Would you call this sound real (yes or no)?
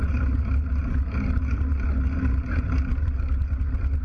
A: yes